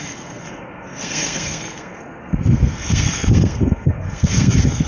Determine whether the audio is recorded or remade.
remade